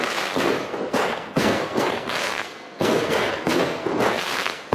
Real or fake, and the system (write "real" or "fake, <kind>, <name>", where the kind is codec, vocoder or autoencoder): fake, codec, SNAC